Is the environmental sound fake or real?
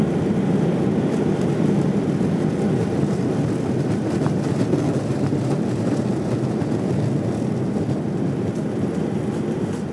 real